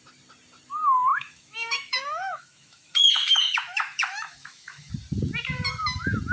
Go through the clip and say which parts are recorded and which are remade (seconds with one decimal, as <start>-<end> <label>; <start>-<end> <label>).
0.0-1.1 recorded; 1.1-4.9 remade; 4.9-6.3 recorded